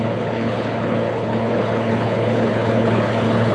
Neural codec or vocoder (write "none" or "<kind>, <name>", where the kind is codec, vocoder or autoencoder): codec, HILCodec